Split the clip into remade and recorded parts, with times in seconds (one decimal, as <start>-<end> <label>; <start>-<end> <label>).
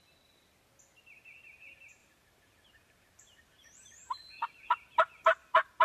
0.0-2.0 recorded; 2.0-5.8 remade